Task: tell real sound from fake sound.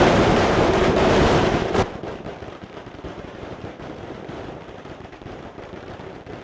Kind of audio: fake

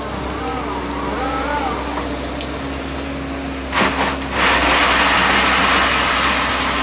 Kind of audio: real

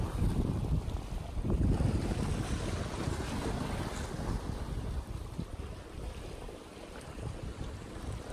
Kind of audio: real